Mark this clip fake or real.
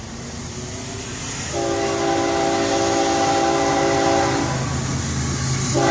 real